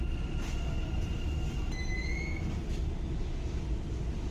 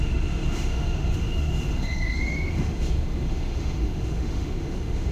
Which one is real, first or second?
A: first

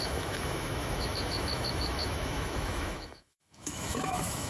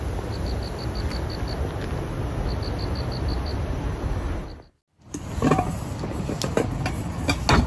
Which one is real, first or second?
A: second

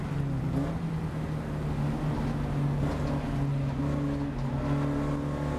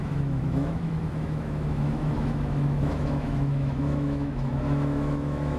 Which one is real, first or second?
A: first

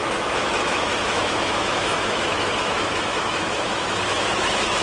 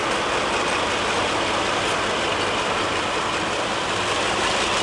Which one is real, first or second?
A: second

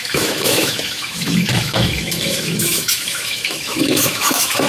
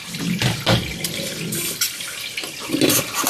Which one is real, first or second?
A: second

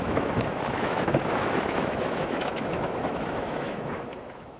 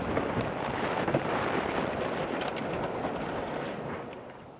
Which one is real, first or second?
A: second